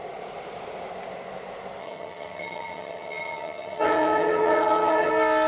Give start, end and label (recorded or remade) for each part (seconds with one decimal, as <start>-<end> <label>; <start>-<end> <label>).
0.0-1.8 recorded; 1.8-5.1 remade; 5.1-5.5 recorded